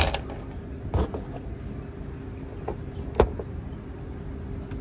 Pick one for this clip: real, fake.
real